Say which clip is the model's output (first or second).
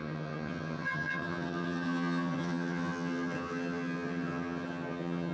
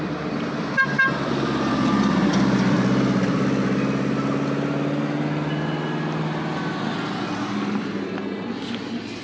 first